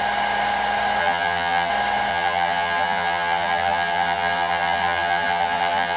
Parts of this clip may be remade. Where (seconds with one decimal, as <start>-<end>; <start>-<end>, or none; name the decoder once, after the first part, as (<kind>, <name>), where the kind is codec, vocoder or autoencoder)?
1.0-1.7 (vocoder, BigVGAN v2); 2.1-6.0